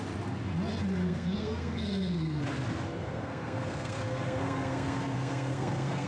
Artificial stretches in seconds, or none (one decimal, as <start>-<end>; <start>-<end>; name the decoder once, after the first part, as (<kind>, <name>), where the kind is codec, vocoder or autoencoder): 1.0-2.4 (codec, SNAC); 3.0-6.1